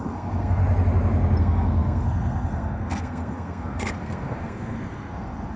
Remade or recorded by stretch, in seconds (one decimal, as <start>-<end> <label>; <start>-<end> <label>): 0.0-0.6 remade; 0.6-1.4 recorded; 1.4-5.6 remade